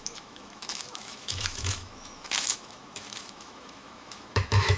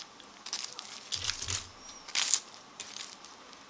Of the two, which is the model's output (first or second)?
first